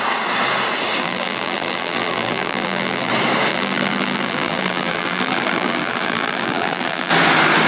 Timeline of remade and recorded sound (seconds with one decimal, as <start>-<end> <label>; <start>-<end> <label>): 0.0-1.0 recorded; 1.0-3.1 remade; 3.1-3.5 recorded; 3.5-7.1 remade; 7.1-7.7 recorded